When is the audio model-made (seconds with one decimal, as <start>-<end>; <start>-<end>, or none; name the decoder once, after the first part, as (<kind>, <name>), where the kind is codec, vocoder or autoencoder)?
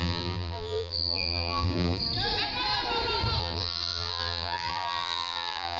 0.0-2.0 (vocoder, BigVGAN v2); 3.4-5.8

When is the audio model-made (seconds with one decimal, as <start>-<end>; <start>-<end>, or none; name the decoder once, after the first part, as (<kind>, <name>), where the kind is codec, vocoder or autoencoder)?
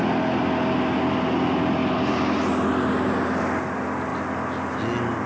none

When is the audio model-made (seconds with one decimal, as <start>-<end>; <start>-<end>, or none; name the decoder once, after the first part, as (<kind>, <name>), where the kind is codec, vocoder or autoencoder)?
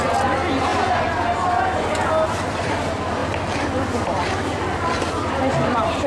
3.2-6.1 (vocoder, BigVGAN v2)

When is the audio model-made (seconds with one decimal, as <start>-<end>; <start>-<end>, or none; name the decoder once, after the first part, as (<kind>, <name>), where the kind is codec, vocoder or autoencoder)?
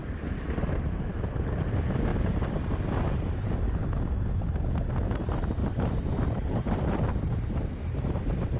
5.6-7.6 (vocoder, BigVGAN v2)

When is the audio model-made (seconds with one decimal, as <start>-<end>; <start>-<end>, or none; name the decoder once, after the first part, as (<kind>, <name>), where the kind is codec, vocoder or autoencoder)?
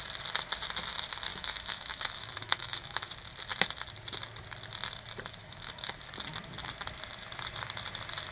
1.3-3.1 (autoencoder, DAC-VAE); 5.4-5.9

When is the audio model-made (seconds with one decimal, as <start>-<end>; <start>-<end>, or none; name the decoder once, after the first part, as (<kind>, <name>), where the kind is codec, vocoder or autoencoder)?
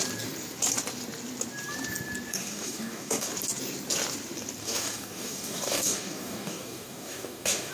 2.3-3.3 (codec, DAC); 4.6-7.7